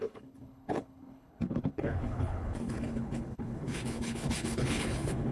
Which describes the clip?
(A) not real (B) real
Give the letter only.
A